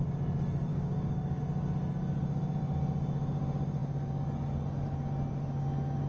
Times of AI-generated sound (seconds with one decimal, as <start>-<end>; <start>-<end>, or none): 0.7-1.4